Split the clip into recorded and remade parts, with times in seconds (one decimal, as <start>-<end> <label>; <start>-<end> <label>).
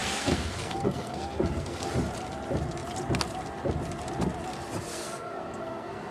0.0-1.9 remade; 1.9-4.9 recorded; 4.9-6.1 remade